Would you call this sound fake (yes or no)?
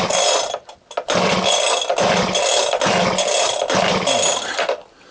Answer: no